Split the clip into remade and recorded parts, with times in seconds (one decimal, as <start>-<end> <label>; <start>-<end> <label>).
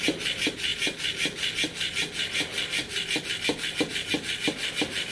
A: 0.0-5.1 recorded